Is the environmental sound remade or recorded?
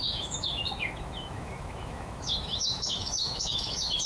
remade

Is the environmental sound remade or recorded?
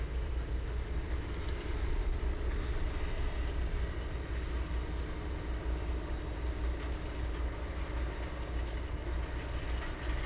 recorded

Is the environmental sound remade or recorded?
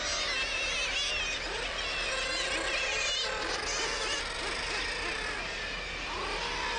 recorded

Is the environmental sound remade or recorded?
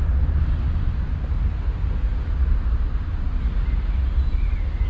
recorded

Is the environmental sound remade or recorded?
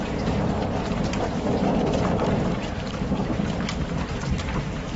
remade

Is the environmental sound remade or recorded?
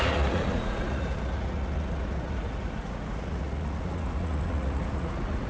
remade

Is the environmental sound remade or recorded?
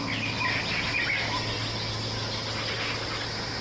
recorded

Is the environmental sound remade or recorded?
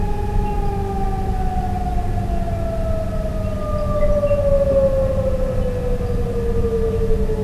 recorded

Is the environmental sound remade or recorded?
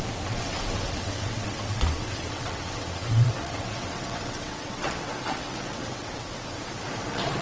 remade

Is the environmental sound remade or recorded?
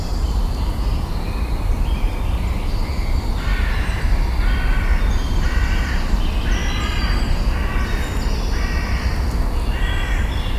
recorded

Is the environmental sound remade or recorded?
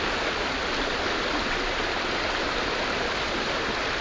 recorded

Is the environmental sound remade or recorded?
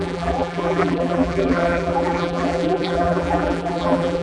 remade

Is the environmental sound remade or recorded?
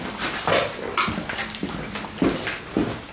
recorded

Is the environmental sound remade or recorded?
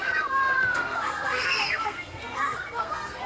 remade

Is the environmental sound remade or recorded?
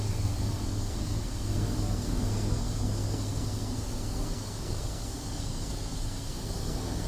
remade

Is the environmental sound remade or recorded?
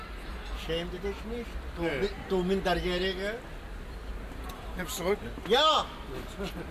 recorded